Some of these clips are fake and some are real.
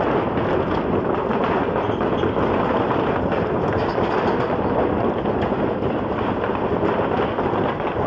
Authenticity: real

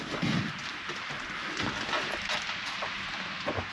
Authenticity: real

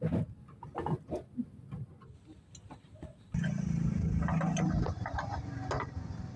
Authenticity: real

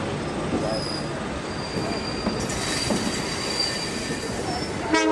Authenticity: real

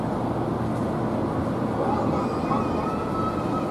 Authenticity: real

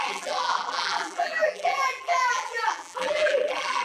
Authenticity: fake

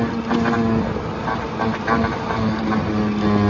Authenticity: real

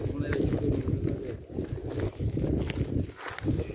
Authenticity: real